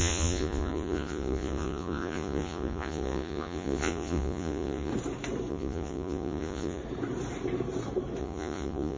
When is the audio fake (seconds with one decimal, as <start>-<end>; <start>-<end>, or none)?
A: 0.0-4.9; 5.5-6.8; 8.2-9.0